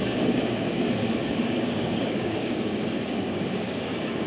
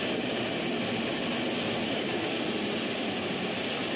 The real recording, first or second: second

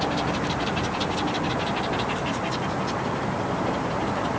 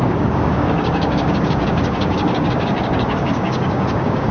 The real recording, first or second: first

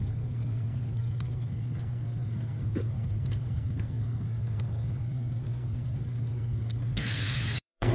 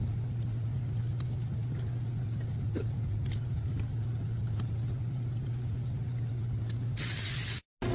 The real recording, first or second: second